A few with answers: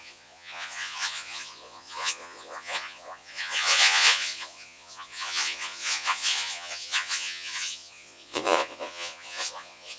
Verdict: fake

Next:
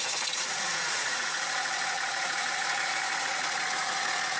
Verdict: fake